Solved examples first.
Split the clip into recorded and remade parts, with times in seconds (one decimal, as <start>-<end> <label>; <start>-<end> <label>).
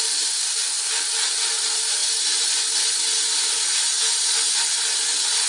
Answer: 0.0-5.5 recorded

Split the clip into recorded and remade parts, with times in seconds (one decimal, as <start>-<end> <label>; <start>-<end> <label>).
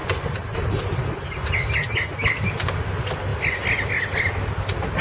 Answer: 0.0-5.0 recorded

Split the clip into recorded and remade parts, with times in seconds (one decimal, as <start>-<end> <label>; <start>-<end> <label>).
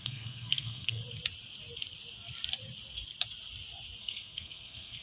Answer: 0.0-1.0 remade; 1.0-4.0 recorded; 4.0-5.0 remade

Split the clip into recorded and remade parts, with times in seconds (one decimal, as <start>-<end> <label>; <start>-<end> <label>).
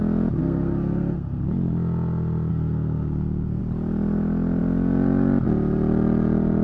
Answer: 0.0-0.4 recorded; 0.4-1.4 remade; 1.4-2.5 recorded; 2.5-3.6 remade; 3.6-6.6 recorded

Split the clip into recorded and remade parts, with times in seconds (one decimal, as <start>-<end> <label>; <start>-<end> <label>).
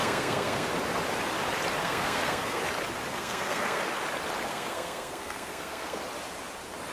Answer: 0.0-0.7 remade; 0.7-1.8 recorded; 1.8-2.6 remade; 2.6-3.1 recorded; 3.1-3.8 remade; 3.8-4.5 recorded; 4.5-6.0 remade; 6.0-6.9 recorded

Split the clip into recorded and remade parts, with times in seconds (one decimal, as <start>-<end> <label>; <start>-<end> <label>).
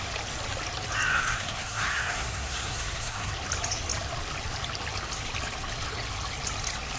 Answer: 0.0-1.1 recorded; 1.1-3.3 remade; 3.3-7.0 recorded